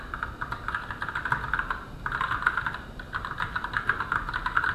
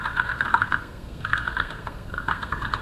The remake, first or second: second